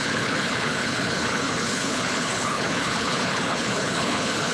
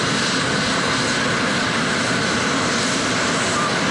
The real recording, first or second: second